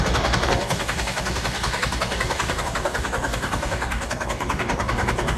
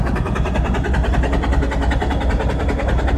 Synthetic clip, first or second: first